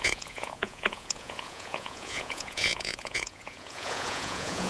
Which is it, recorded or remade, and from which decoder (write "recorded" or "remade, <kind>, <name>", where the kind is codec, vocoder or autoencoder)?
remade, vocoder, Vocos